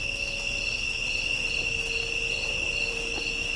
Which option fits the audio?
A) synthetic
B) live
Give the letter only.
B